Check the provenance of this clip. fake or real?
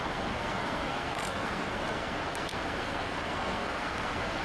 fake